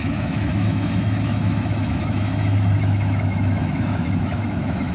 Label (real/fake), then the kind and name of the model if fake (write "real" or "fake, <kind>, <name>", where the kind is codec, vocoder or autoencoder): fake, autoencoder, DAC-VAE